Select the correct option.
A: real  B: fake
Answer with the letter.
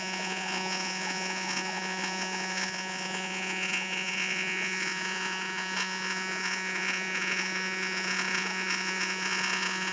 B